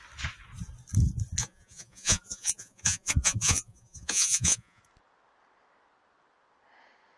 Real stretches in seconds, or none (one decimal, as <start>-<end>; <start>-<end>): 0.0-1.4; 4.8-7.2